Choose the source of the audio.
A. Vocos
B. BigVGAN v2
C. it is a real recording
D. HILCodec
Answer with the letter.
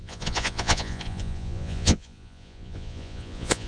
A